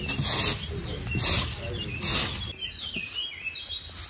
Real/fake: real